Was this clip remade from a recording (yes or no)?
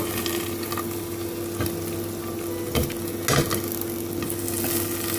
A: no